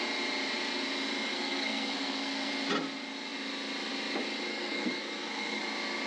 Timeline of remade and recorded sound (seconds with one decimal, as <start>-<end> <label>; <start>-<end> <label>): 0.0-1.3 recorded; 1.3-2.5 remade; 2.5-4.5 recorded; 4.5-5.6 remade; 5.6-6.1 recorded